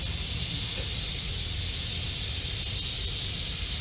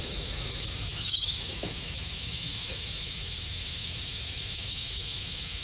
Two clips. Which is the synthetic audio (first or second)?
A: second